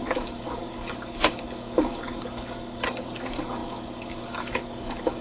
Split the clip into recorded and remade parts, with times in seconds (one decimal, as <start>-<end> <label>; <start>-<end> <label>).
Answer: 0.0-5.2 remade